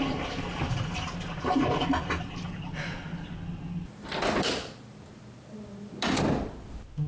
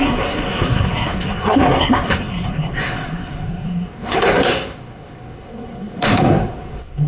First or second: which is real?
first